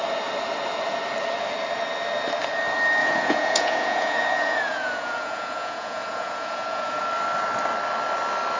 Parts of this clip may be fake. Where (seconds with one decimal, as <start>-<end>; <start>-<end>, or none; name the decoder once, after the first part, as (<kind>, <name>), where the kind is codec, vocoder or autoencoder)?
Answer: 3.0-7.0 (vocoder, Vocos)